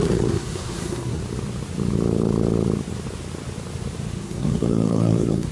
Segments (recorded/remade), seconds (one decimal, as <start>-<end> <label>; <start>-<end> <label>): 0.0-1.2 remade; 1.2-4.1 recorded; 4.1-5.5 remade